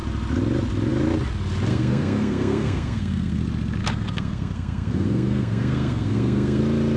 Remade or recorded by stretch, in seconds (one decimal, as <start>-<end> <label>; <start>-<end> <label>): 0.0-1.7 recorded; 1.7-3.4 remade; 3.4-3.8 recorded; 3.8-6.6 remade; 6.6-7.0 recorded